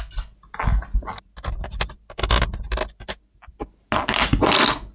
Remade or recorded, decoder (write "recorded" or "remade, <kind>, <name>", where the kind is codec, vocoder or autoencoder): recorded